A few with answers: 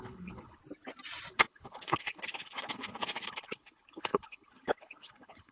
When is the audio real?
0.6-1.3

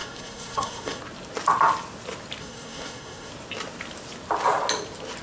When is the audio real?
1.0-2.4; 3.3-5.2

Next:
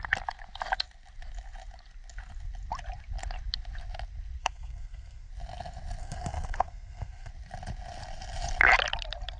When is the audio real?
0.0-4.4; 5.3-6.0; 7.3-9.4

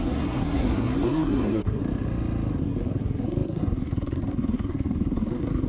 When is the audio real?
1.8-2.6

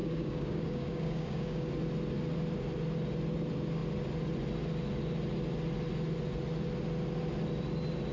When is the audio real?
1.7-8.1

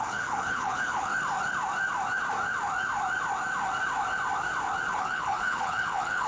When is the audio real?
1.1-4.9

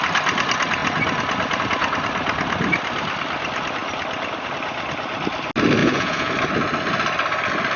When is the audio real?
0.0-5.8; 6.3-7.8

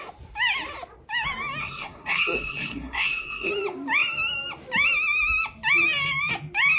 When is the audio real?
0.0-1.6; 3.5-6.8